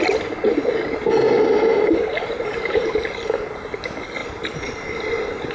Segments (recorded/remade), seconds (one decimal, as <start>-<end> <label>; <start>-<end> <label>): 0.0-1.7 recorded; 1.7-2.9 remade; 2.9-4.2 recorded; 4.2-4.8 remade; 4.8-5.5 recorded